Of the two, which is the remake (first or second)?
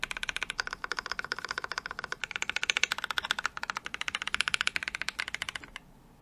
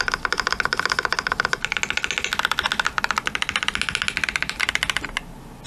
first